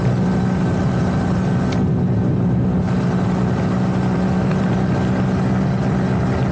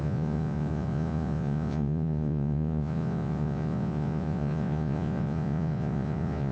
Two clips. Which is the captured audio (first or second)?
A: first